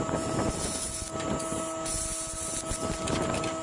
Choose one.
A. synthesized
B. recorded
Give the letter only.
B